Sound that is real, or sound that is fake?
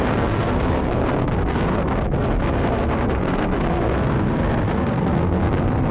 fake